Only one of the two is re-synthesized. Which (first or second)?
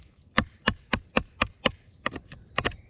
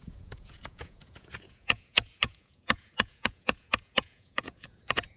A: second